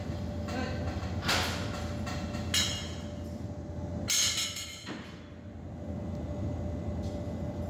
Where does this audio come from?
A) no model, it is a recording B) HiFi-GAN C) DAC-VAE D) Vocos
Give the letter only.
A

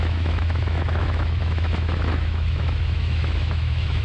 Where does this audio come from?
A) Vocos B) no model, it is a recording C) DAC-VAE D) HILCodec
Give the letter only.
C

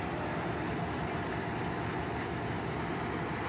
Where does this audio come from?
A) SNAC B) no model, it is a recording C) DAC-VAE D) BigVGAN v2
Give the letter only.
B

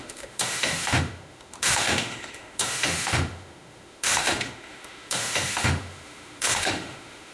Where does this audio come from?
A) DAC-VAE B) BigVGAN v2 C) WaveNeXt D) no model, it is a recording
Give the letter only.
A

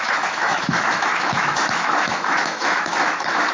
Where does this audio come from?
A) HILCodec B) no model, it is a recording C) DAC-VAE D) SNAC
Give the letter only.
C